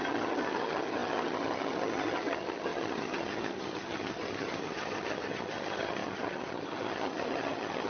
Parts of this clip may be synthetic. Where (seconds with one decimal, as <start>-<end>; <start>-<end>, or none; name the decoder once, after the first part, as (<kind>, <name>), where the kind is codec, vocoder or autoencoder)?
0.0-7.9 (vocoder, HiFi-GAN)